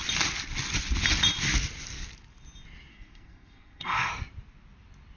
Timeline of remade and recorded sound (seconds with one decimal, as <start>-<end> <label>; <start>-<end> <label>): 0.0-2.9 recorded; 2.9-4.1 remade; 4.1-5.2 recorded